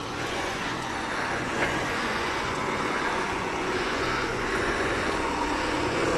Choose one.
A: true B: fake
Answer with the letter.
B